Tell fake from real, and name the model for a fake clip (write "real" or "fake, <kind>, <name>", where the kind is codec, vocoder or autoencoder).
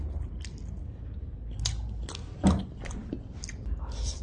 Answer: real